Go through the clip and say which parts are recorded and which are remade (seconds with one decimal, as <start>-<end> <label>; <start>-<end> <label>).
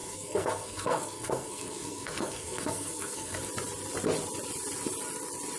0.0-3.4 remade; 3.4-5.6 recorded